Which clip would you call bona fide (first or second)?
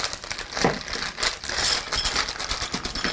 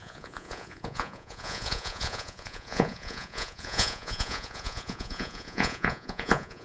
first